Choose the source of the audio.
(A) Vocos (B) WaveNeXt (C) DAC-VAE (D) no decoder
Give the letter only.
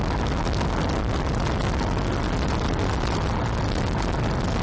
D